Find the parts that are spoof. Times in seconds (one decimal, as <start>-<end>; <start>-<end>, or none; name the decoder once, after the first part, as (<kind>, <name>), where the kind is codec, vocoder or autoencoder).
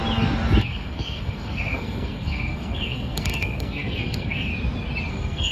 0.6-4.5 (codec, SNAC); 5.1-5.5